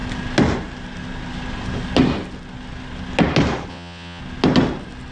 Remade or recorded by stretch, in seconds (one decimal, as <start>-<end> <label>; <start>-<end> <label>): 0.0-3.7 recorded; 3.7-4.2 remade; 4.2-5.1 recorded